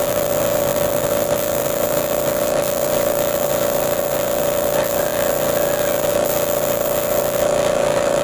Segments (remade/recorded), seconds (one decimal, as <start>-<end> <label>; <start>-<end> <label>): 0.0-8.2 remade